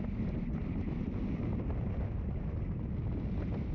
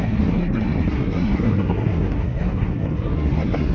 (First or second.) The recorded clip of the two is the first